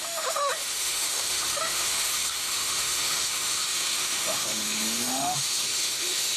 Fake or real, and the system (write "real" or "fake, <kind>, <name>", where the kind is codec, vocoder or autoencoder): fake, autoencoder, DAC-VAE